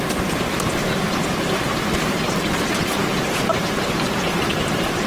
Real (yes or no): no